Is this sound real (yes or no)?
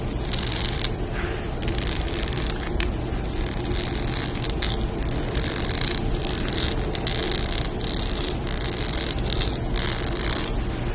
yes